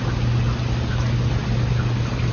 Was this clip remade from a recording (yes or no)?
no